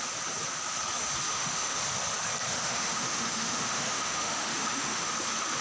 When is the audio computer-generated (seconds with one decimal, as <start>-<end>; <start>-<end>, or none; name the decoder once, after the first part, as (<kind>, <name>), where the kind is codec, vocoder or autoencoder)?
1.3-1.8 (autoencoder, DAC-VAE); 2.5-5.1

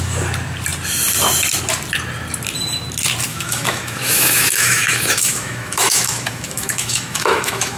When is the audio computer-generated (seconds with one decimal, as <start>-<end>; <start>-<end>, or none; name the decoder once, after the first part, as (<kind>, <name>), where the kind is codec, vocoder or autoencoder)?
3.3-7.8 (autoencoder, DAC-VAE)

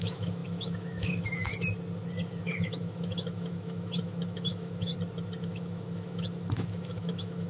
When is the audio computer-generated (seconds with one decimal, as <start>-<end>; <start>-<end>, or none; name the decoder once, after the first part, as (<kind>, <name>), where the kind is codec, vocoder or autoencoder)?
0.0-1.5 (autoencoder, DAC-VAE); 2.4-4.9; 5.4-7.5